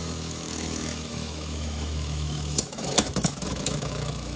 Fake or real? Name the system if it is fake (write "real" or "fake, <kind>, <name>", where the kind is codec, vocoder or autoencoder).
fake, autoencoder, DAC-VAE